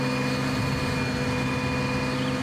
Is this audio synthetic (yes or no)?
no